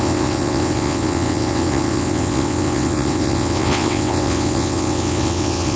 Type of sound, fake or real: fake